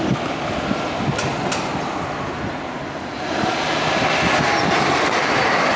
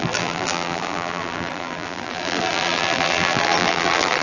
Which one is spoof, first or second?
second